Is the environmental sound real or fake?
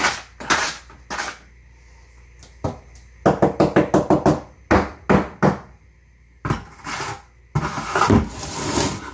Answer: real